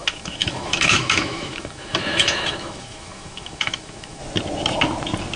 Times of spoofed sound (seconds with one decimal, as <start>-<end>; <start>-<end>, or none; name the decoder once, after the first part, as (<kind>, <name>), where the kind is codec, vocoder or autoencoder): 0.0-4.2 (autoencoder, DAC-VAE)